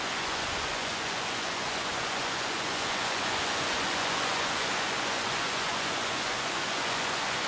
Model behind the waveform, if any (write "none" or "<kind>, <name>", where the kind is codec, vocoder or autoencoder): vocoder, Vocos